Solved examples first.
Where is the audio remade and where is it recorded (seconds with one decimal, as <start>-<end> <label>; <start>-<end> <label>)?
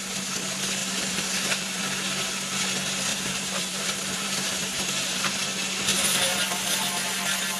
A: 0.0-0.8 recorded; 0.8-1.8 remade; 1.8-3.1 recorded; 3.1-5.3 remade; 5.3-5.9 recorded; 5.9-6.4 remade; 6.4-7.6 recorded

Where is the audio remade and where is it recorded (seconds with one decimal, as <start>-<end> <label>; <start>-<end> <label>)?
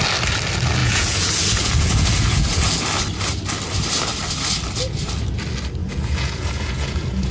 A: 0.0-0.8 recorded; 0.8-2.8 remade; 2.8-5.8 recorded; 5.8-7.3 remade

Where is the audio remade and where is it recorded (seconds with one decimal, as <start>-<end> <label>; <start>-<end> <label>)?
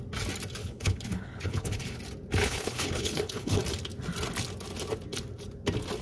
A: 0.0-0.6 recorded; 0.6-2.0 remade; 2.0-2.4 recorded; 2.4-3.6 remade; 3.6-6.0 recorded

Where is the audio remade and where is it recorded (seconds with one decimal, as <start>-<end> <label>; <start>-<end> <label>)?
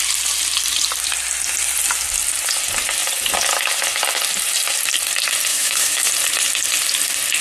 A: 0.0-5.5 recorded; 5.5-6.1 remade; 6.1-7.4 recorded